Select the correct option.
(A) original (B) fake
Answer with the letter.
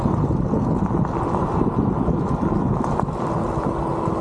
A